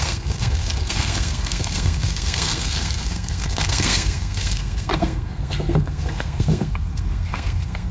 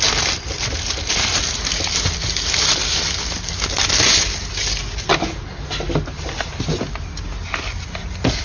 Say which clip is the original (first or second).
second